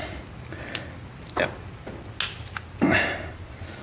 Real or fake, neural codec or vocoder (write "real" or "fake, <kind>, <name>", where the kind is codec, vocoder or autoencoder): real